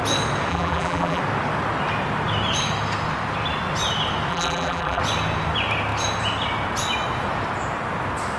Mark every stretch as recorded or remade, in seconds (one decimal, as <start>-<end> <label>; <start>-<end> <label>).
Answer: 0.0-0.5 recorded; 0.5-1.2 remade; 1.2-4.3 recorded; 4.3-5.0 remade; 5.0-8.4 recorded